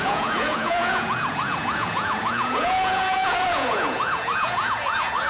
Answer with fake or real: fake